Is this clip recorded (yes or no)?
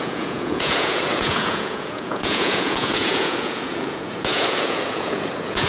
no